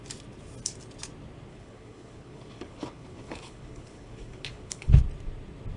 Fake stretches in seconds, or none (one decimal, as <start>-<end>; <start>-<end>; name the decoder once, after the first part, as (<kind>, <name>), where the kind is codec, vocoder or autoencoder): 1.5-5.0 (codec, HILCodec)